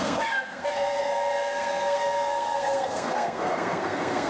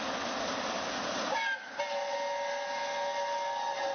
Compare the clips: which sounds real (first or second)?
second